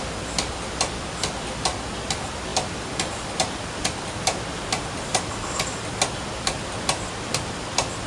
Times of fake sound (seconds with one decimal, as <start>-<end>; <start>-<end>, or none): none